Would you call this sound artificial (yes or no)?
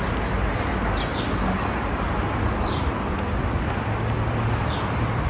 no